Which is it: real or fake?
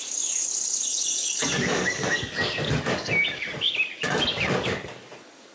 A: fake